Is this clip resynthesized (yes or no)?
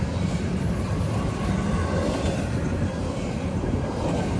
no